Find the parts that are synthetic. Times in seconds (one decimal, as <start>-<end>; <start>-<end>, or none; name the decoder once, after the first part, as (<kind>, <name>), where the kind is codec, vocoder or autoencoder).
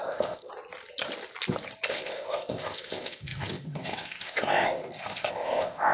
0.0-0.5 (codec, ZipCodec); 1.9-5.9